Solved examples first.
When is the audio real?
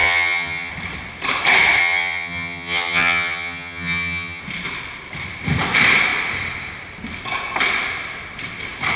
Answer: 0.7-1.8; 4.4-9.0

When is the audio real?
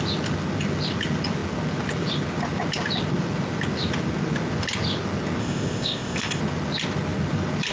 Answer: 0.0-5.4; 6.4-7.7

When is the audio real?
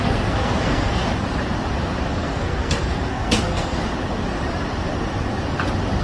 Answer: 1.0-2.1; 3.8-6.0